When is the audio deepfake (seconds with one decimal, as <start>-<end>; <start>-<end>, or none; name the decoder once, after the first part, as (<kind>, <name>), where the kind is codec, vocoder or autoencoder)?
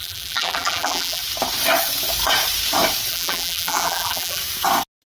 0.0-1.2 (vocoder, BigVGAN v2); 3.1-4.4